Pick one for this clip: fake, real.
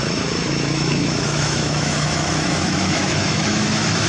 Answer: fake